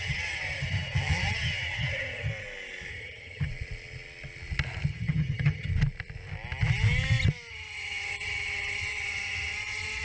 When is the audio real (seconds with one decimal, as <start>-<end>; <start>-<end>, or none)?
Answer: 2.3-2.9; 3.5-4.9; 5.7-7.5